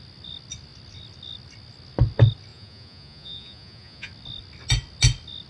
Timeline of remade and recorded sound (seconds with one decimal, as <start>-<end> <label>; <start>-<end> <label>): 0.0-2.5 recorded; 2.5-4.1 remade; 4.1-5.5 recorded